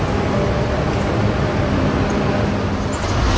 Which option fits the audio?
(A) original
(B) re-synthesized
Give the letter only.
A